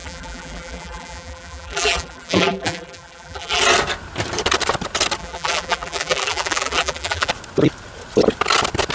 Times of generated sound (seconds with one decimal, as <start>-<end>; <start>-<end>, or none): 0.0-3.6; 5.2-7.3